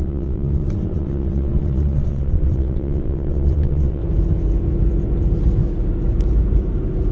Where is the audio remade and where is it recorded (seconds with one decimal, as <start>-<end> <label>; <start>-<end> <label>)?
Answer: 0.0-4.0 remade; 4.0-7.1 recorded